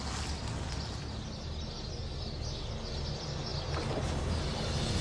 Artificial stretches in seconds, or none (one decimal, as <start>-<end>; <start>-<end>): none